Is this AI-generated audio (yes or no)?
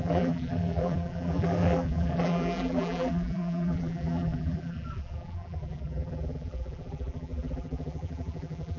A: yes